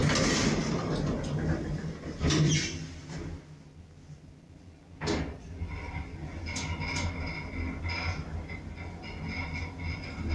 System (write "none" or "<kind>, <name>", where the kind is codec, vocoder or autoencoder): none